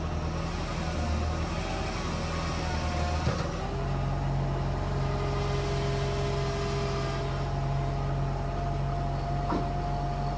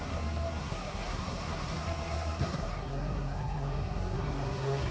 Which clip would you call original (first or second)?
first